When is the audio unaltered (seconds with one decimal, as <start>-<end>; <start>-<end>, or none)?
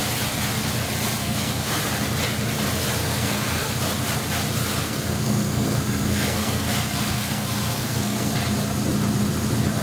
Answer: 0.0-1.2; 1.8-3.0; 3.8-4.8; 8.3-9.8